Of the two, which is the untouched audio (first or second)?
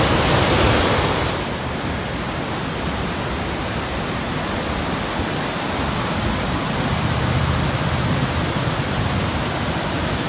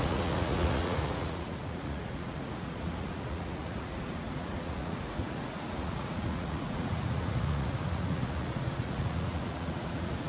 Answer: first